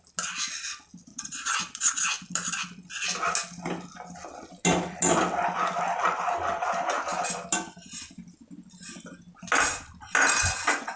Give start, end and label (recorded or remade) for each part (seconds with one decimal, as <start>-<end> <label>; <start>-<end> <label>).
0.0-1.1 recorded; 1.1-2.0 remade; 2.0-11.0 recorded